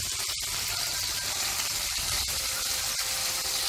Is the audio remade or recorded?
remade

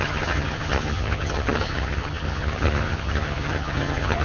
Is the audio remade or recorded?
remade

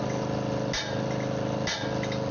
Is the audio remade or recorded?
recorded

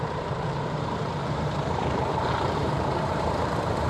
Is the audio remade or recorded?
remade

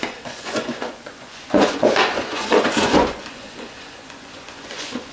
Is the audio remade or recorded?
remade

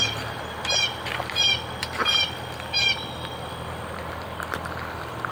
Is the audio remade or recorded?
remade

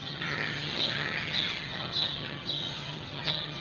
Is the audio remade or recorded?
remade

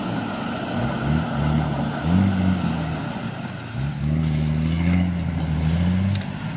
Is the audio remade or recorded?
recorded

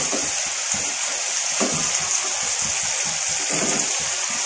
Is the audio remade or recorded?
recorded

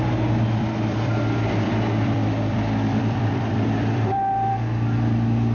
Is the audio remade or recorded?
remade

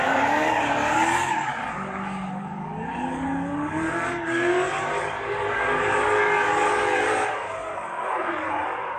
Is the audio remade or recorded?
remade